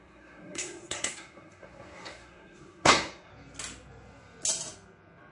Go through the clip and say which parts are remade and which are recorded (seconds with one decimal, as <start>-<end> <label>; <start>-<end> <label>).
0.0-3.3 remade; 3.3-5.3 recorded